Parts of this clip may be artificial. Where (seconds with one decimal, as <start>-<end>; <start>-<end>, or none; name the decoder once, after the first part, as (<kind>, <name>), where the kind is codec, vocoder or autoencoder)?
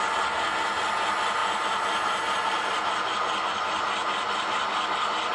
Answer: 1.4-3.1 (vocoder, BigVGAN v2)